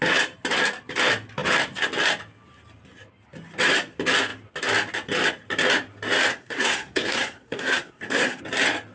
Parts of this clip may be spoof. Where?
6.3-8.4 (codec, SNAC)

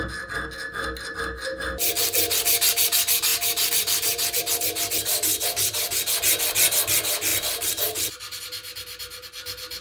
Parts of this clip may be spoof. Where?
7.3-8.4 (vocoder, BigVGAN v2)